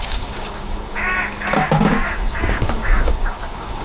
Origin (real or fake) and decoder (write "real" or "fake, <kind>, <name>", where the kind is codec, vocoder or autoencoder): fake, codec, DAC